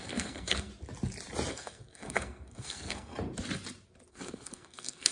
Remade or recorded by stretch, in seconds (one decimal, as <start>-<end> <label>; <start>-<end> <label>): 0.0-0.7 remade; 0.7-1.5 recorded; 1.5-3.1 remade; 3.1-4.1 recorded; 4.1-5.1 remade